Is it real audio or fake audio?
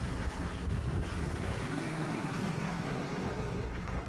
fake